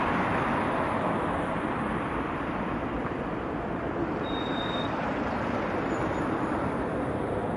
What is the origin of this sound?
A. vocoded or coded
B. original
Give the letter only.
A